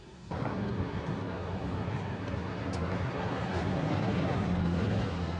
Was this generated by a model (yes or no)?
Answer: yes